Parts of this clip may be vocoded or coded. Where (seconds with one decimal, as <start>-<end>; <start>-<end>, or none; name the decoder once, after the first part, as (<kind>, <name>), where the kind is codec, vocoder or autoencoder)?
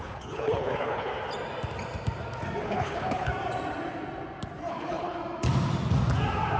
0.0-1.1 (codec, HILCodec); 2.6-3.3; 4.7-5.2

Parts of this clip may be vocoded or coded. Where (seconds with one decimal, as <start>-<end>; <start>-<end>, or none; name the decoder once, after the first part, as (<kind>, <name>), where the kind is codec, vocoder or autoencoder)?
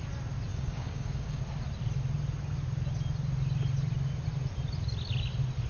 0.5-1.4 (codec, DAC)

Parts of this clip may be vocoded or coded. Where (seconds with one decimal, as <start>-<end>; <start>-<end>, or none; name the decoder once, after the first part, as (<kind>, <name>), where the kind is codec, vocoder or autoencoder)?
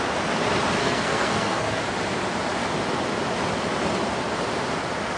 0.8-1.8 (codec, SNAC)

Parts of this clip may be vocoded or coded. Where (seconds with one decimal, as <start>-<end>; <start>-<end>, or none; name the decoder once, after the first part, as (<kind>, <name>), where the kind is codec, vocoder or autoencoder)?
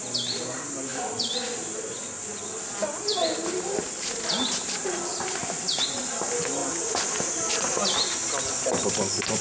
none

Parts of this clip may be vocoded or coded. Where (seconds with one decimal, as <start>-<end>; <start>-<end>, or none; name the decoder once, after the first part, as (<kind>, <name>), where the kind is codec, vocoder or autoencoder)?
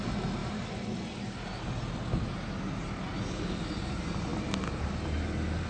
none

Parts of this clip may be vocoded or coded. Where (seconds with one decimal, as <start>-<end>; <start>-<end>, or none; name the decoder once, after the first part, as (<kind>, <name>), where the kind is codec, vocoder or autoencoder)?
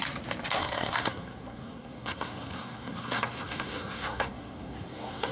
0.6-5.3 (codec, SNAC)